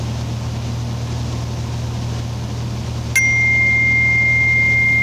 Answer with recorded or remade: recorded